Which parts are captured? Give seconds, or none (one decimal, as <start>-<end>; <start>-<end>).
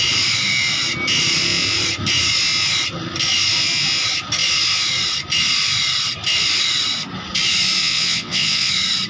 0.0-7.8; 8.7-9.1